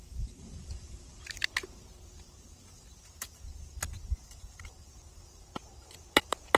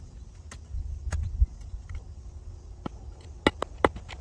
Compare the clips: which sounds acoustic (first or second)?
second